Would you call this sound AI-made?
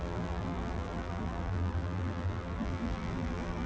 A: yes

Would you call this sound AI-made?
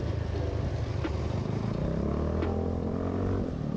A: no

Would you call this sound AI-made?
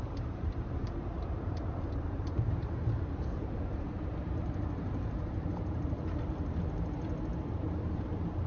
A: yes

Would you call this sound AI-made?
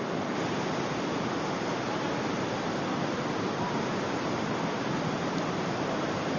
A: yes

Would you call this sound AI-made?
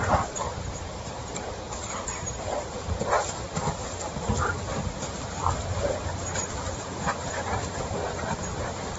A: yes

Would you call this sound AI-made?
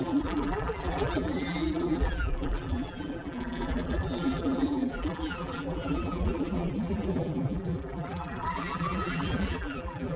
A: yes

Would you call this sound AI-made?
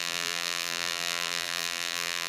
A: yes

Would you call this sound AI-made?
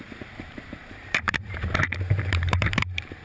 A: yes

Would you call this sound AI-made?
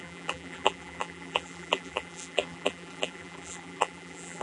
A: yes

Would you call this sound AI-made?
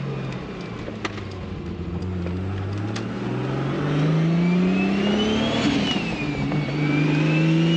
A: no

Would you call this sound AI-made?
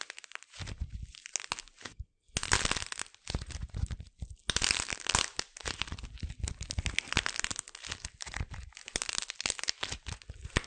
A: no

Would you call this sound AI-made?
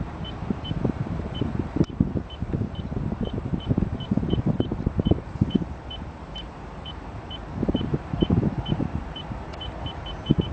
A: yes